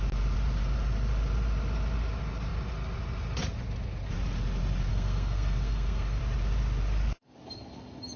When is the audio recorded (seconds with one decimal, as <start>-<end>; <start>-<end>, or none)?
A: 0.0-4.9; 6.2-8.2